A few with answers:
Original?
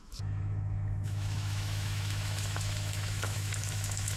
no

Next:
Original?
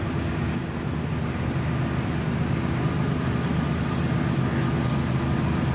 yes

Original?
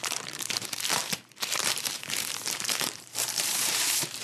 no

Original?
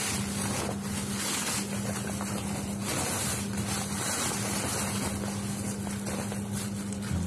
yes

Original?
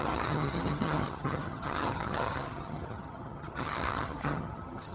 no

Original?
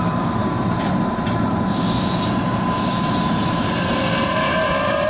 no